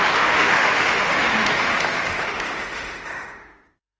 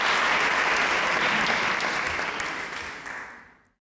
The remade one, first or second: first